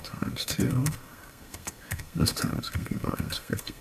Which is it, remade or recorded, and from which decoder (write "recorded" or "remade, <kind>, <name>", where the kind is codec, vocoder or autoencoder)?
remade, codec, SNAC